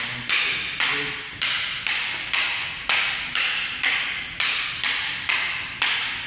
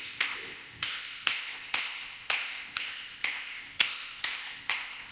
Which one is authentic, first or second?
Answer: first